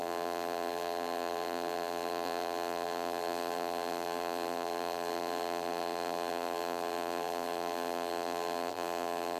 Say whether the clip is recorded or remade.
remade